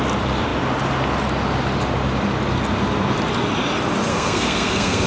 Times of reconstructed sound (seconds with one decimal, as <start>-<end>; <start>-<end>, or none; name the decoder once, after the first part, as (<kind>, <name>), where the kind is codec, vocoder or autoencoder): 4.1-5.1 (codec, SNAC)